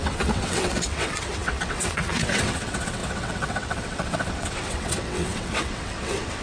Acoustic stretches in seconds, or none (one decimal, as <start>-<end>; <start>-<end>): none